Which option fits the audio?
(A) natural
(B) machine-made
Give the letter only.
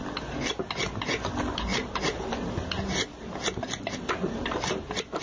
A